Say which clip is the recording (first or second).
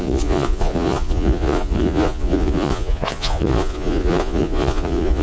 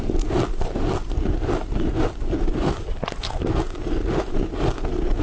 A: second